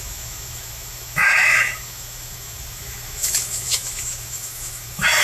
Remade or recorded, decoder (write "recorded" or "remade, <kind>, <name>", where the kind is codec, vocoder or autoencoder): remade, autoencoder, DAC-VAE